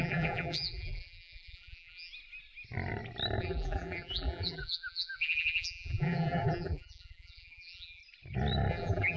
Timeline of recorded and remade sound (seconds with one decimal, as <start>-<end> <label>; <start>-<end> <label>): 0.0-2.1 remade; 2.1-3.4 recorded; 3.4-8.0 remade; 8.0-8.7 recorded; 8.7-9.2 remade